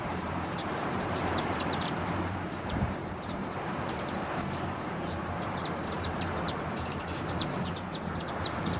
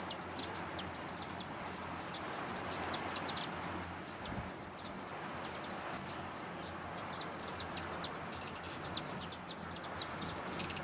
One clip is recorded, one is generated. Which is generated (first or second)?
first